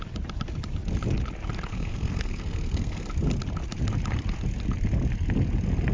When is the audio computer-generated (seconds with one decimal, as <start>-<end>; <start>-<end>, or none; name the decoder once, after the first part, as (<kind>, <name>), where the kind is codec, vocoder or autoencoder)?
1.7-3.1 (codec, SNAC)